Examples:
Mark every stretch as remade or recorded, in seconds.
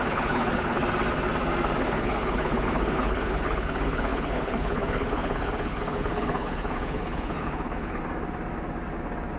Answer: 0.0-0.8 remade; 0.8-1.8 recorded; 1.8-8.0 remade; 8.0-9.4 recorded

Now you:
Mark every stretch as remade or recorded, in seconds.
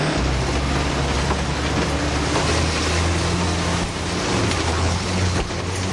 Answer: 0.0-4.7 recorded; 4.7-5.5 remade; 5.5-5.9 recorded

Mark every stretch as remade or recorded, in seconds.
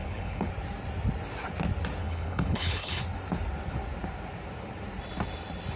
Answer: 0.0-0.5 remade; 0.5-2.0 recorded; 2.0-3.0 remade; 3.0-5.8 recorded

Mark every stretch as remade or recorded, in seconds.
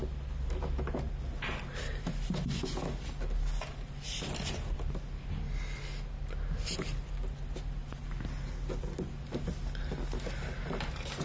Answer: 0.0-11.2 recorded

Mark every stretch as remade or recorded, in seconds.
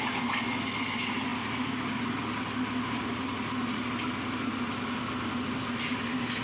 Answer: 0.0-6.4 recorded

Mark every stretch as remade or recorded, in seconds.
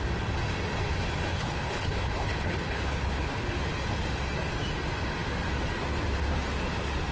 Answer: 0.0-1.3 recorded; 1.3-3.6 remade; 3.6-7.1 recorded